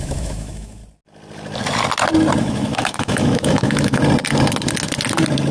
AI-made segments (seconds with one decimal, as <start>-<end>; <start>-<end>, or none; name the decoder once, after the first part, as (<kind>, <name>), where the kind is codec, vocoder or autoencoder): 0.0-0.8 (autoencoder, DAC-VAE); 2.4-4.0